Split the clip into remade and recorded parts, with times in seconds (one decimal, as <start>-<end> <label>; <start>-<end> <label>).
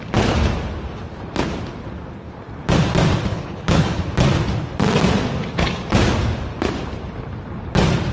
0.0-3.3 recorded; 3.3-4.0 remade; 4.0-8.1 recorded